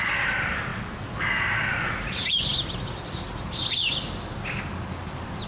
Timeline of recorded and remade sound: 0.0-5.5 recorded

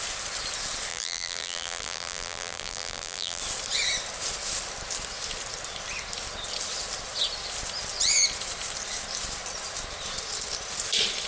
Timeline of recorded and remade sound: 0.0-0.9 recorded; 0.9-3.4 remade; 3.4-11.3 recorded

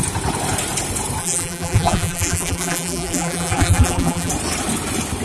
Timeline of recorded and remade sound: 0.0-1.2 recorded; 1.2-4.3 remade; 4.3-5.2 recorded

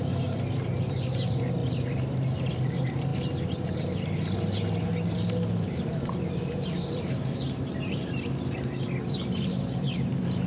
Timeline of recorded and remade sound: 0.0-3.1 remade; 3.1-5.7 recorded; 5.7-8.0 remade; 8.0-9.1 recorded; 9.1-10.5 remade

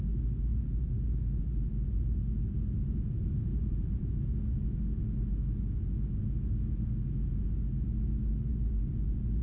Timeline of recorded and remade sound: 0.0-0.5 recorded; 0.5-4.1 remade; 4.1-8.5 recorded; 8.5-9.4 remade

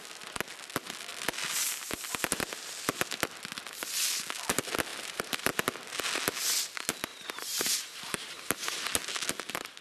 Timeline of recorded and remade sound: 0.0-4.9 recorded; 4.9-5.7 remade; 5.7-7.1 recorded; 7.1-9.0 remade; 9.0-9.8 recorded

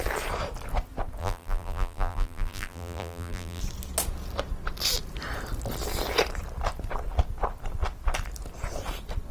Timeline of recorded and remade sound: 0.0-1.2 recorded; 1.2-3.6 remade; 3.6-9.3 recorded